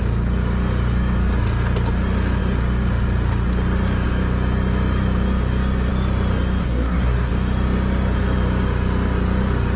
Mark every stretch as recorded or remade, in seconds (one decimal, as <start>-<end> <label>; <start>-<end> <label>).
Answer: 0.0-6.6 recorded; 6.6-7.3 remade; 7.3-9.8 recorded